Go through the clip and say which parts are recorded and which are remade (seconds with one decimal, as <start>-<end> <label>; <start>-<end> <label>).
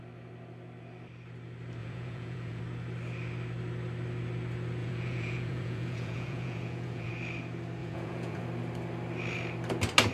0.0-1.8 recorded; 1.8-2.6 remade; 2.6-4.8 recorded; 4.8-7.1 remade; 7.1-7.8 recorded; 7.8-8.4 remade; 8.4-10.1 recorded